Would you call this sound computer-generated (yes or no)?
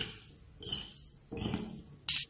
no